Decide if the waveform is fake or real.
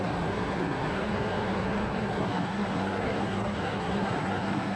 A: fake